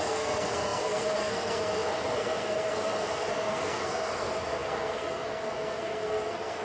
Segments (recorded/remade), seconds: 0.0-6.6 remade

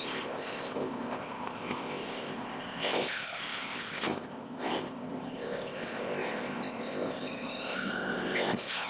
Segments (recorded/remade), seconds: 0.0-8.9 remade